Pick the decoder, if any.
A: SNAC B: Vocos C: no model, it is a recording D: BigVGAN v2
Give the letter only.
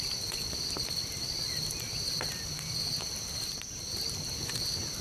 D